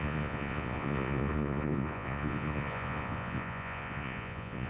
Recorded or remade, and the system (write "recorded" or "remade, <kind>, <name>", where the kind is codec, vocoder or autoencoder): remade, vocoder, Vocos